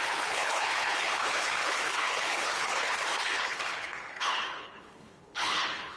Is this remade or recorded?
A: remade